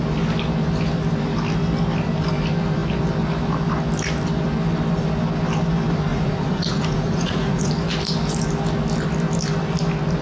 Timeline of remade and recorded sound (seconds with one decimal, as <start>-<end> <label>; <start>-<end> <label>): 0.0-6.1 recorded; 6.1-7.7 remade; 7.7-10.2 recorded